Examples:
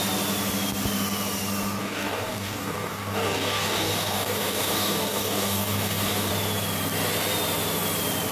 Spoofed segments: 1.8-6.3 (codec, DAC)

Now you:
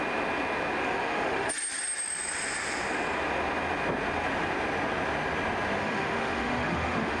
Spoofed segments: 0.8-1.5 (autoencoder, DAC-VAE); 5.8-7.2

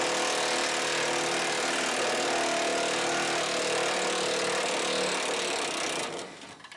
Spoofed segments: none

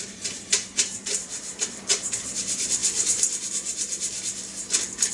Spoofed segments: 0.0-2.8 (vocoder, BigVGAN v2)

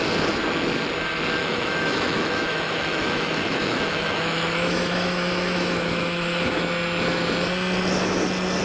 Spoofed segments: 1.4-6.6 (autoencoder, DAC-VAE)